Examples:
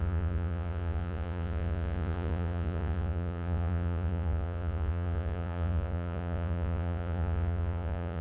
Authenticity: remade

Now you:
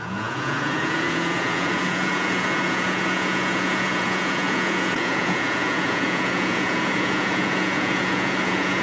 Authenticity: remade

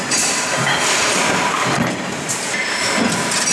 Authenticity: recorded